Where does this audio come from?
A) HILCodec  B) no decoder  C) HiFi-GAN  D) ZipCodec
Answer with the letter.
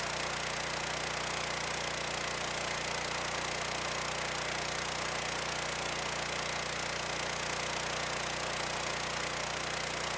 B